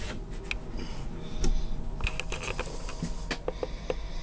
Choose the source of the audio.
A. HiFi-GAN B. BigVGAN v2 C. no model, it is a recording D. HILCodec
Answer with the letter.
C